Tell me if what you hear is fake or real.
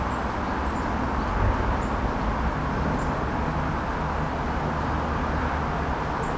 real